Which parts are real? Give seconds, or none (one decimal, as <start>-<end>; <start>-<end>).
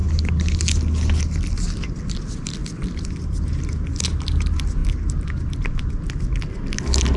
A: 0.0-7.2